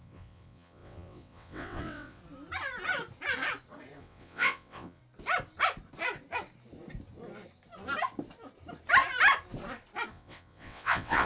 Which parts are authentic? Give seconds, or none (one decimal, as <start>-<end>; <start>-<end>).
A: 2.2-4.0; 5.0-10.1